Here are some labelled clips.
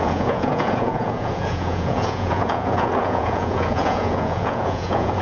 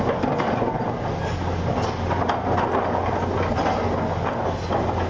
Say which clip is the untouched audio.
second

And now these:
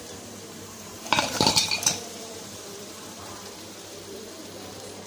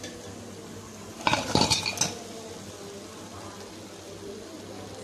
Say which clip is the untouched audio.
second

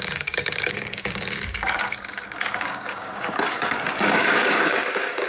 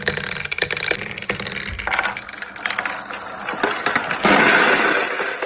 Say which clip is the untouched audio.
second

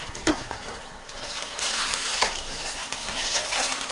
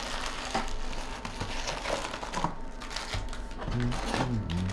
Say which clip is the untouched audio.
second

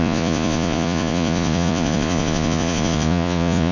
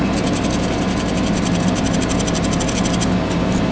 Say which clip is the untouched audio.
second